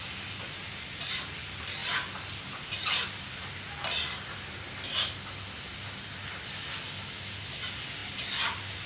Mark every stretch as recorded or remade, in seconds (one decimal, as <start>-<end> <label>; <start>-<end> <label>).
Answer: 0.0-8.9 recorded